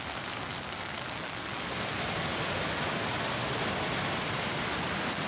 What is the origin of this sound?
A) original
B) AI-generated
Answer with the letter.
A